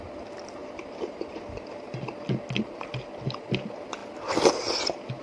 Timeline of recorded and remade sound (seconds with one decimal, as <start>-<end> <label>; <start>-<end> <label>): 0.0-0.6 recorded; 0.6-1.4 remade; 1.4-5.2 recorded